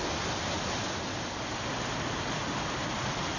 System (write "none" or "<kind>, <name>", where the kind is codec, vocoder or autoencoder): none